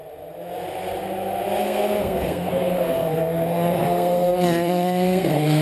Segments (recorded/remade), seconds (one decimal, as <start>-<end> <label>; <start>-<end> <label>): 0.0-1.6 recorded; 1.6-5.6 remade